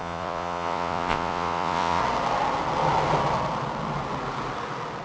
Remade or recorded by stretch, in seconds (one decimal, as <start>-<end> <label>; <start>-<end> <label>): 0.0-2.0 remade; 2.0-5.0 recorded